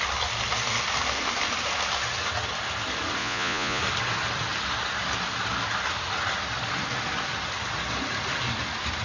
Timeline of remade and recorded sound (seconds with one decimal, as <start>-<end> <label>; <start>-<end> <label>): 0.0-3.2 recorded; 3.2-3.8 remade; 3.8-9.0 recorded